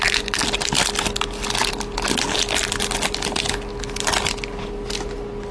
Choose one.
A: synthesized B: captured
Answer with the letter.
B